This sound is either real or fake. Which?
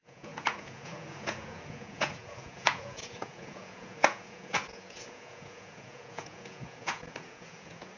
fake